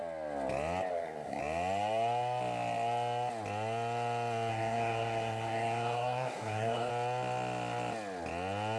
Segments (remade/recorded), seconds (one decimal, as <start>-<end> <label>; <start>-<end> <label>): 0.0-0.9 recorded; 0.9-1.4 remade; 1.4-4.5 recorded; 4.5-6.9 remade; 6.9-8.8 recorded